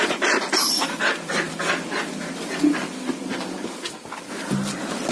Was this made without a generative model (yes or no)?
no